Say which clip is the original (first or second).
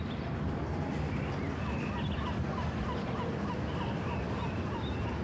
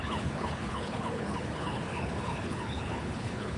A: first